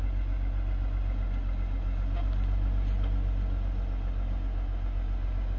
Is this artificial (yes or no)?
no